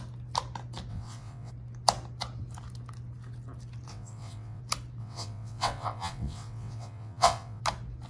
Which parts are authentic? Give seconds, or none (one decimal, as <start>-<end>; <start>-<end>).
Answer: 0.0-0.9; 1.5-3.9; 4.6-5.0; 7.6-8.1